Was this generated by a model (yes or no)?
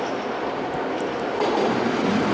no